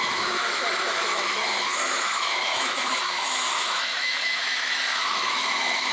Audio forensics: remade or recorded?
remade